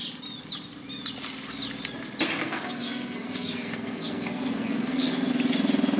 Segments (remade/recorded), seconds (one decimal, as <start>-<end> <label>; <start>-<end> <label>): 0.0-2.4 recorded; 2.4-5.3 remade; 5.3-6.0 recorded